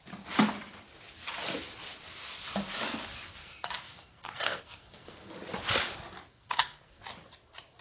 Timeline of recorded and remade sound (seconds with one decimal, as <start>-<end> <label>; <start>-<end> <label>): 0.0-3.4 recorded; 3.4-5.3 remade; 5.3-6.3 recorded; 6.3-7.0 remade; 7.0-7.8 recorded